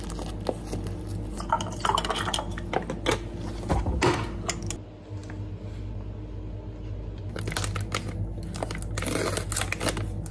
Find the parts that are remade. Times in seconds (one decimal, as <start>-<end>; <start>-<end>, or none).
none